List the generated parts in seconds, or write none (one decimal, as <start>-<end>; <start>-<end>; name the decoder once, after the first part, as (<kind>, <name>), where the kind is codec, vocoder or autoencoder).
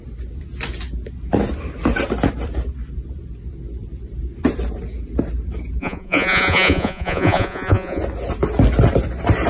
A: 5.8-8.0 (vocoder, Vocos)